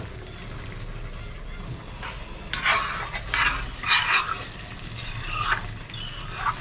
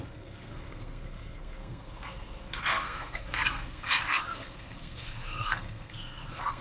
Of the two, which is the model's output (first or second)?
second